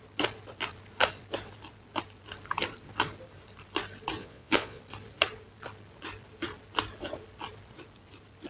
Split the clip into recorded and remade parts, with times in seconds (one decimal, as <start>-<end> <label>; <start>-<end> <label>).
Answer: 0.0-4.2 recorded; 4.2-4.8 remade; 4.8-8.5 recorded